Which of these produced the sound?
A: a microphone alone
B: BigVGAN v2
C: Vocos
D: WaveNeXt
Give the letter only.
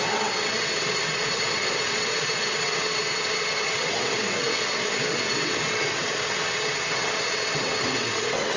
D